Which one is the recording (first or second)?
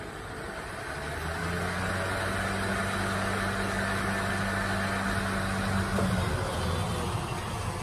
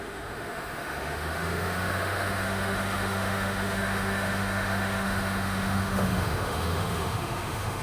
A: first